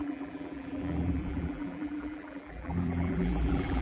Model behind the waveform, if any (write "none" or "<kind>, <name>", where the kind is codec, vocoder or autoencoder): vocoder, BigVGAN v2